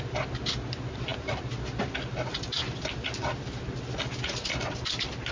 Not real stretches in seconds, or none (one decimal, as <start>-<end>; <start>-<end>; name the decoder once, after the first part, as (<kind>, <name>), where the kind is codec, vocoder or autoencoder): none